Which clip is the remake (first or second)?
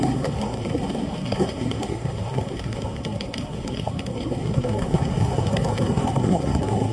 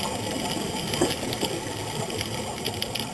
first